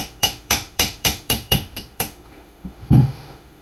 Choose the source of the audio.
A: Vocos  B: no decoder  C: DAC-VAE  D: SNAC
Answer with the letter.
C